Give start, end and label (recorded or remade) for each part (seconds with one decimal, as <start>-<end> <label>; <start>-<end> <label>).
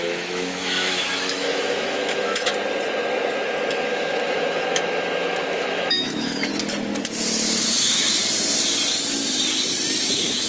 0.0-2.5 remade; 2.5-3.7 recorded; 3.7-6.5 remade; 6.5-7.7 recorded; 7.7-8.2 remade; 8.2-10.1 recorded; 10.1-10.5 remade